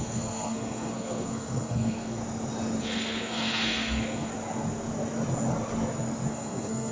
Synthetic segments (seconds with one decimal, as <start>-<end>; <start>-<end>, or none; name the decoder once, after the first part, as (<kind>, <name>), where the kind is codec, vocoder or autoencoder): 0.0-2.2 (codec, SNAC); 2.8-4.3; 6.3-6.9